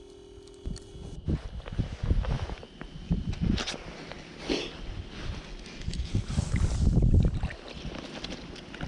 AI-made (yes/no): no